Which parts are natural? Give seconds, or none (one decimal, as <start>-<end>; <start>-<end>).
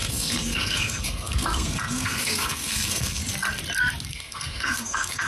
3.2-4.1